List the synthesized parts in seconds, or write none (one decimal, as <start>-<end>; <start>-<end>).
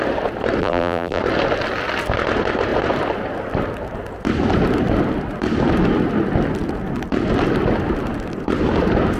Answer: 0.6-1.2